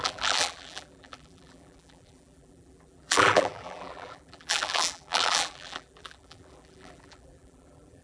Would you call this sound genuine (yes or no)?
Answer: no